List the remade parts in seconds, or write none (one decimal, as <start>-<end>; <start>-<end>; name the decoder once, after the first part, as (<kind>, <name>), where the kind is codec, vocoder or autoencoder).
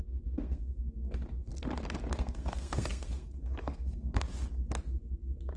0.0-1.5 (codec, SNAC); 2.1-4.3